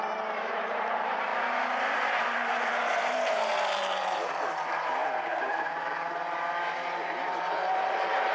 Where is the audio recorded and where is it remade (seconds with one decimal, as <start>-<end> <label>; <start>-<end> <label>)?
0.0-1.3 remade; 1.3-2.2 recorded; 2.2-8.3 remade